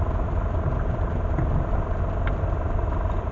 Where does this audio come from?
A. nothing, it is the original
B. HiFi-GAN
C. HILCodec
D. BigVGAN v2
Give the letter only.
D